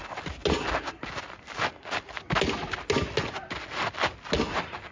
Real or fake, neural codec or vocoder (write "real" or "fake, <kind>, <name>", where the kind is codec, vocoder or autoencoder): real